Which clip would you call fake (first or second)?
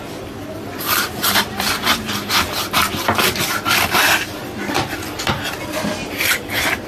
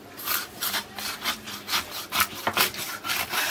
first